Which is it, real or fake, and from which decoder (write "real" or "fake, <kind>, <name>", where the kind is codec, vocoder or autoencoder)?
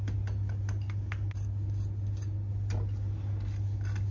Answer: real